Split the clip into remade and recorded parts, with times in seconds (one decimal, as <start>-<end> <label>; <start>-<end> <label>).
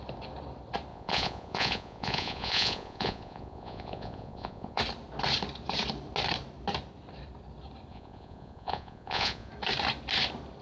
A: 0.0-0.9 recorded; 0.9-4.8 remade; 4.8-7.9 recorded; 7.9-9.5 remade; 9.5-10.6 recorded